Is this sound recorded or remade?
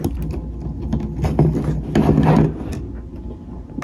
recorded